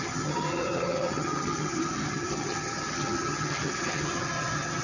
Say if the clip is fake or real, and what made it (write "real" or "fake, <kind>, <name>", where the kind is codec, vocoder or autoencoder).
fake, vocoder, HiFi-GAN